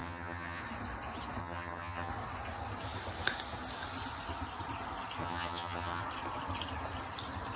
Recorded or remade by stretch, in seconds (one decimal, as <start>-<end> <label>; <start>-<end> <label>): 0.0-0.6 remade; 0.6-1.4 recorded; 1.4-2.1 remade; 2.1-5.2 recorded; 5.2-6.0 remade; 6.0-7.6 recorded